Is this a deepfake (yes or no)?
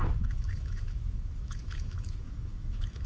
yes